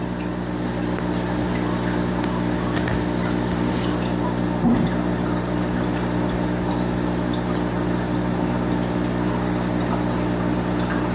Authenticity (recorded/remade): recorded